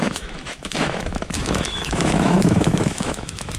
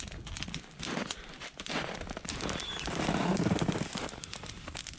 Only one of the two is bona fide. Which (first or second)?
second